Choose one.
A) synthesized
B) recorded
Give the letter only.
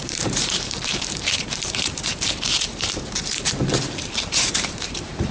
A